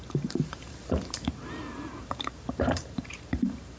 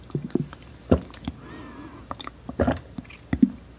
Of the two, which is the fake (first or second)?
first